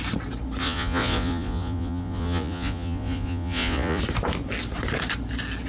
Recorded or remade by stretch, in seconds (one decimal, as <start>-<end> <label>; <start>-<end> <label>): 0.0-0.6 recorded; 0.6-4.0 remade; 4.0-5.7 recorded